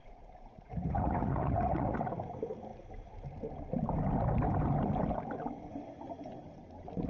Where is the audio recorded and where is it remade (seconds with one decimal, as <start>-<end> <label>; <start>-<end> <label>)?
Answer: 0.0-2.0 remade; 2.0-7.1 recorded